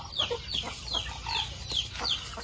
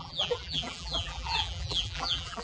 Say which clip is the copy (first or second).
second